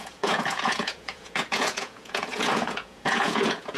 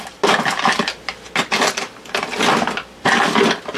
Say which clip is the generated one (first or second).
first